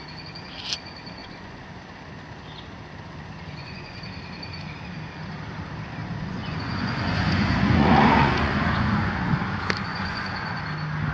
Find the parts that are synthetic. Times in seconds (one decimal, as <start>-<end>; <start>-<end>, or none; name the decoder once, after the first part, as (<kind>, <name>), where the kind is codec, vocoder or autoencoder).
1.2-1.7 (vocoder, Vocos); 3.5-4.0; 6.0-9.3; 9.9-10.6